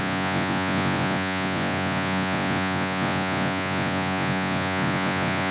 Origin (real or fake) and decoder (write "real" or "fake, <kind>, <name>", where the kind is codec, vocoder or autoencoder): fake, vocoder, Vocos